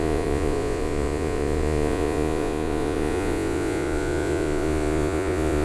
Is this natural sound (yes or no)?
no